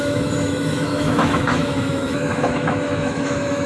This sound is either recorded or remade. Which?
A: remade